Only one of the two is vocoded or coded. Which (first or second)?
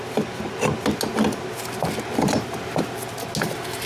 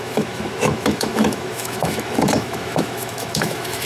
second